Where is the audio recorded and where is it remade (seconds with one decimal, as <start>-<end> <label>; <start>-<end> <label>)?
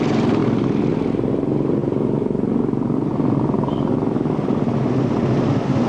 0.0-0.4 remade; 0.4-1.3 recorded; 1.3-1.8 remade; 1.8-5.3 recorded; 5.3-5.9 remade